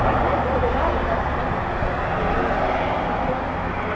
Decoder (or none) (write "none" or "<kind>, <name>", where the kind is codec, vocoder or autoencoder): none